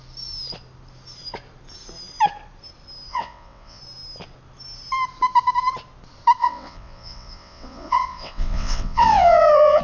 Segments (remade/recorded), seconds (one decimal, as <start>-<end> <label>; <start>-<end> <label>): 0.0-3.1 recorded; 3.1-3.8 remade; 3.8-6.4 recorded; 6.4-9.8 remade